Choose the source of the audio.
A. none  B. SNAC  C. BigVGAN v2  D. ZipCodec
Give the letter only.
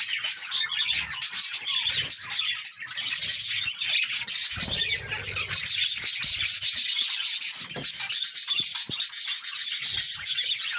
A